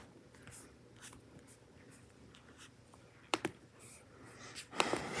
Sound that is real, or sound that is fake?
real